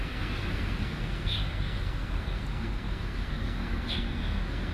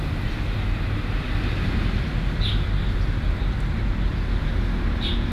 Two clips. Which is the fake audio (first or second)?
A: first